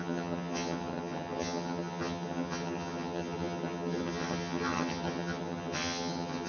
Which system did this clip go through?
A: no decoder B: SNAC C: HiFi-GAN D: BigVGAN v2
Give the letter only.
C